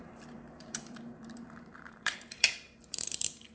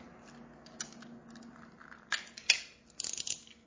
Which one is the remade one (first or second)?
first